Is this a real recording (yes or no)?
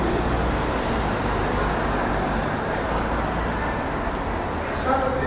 yes